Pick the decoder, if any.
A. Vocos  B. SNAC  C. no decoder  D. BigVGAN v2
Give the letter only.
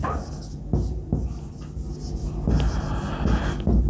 C